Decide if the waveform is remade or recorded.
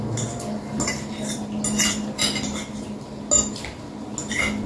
recorded